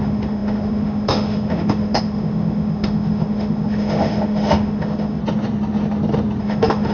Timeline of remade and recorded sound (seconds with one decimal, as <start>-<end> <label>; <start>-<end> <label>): 0.0-5.2 remade; 5.2-6.4 recorded; 6.4-6.9 remade